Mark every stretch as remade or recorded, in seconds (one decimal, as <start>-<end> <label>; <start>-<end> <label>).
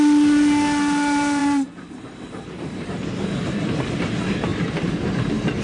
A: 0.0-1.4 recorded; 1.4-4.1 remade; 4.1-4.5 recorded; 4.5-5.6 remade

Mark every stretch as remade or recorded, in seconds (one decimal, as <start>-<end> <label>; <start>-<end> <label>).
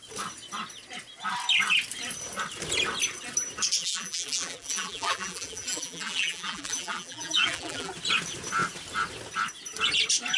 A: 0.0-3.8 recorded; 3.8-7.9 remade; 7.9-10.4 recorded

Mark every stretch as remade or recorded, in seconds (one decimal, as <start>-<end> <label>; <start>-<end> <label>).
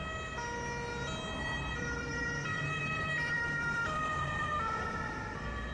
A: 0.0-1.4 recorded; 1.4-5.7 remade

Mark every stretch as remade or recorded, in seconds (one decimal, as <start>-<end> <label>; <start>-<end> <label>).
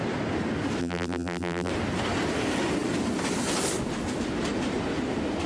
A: 0.0-0.8 recorded; 0.8-1.7 remade; 1.7-5.5 recorded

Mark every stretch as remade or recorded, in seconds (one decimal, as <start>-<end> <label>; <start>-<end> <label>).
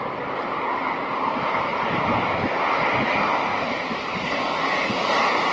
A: 0.0-1.7 recorded; 1.7-2.5 remade; 2.5-3.5 recorded; 3.5-4.4 remade; 4.4-5.5 recorded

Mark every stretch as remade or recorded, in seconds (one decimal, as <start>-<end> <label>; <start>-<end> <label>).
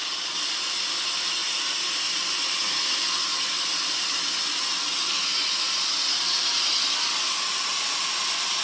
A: 0.0-8.6 recorded